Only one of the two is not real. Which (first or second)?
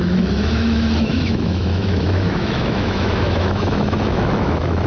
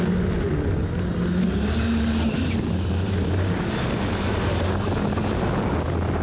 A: first